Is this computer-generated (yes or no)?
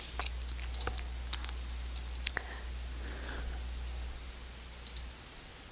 no